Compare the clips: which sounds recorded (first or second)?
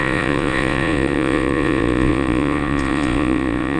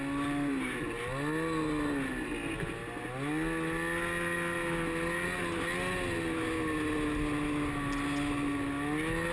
second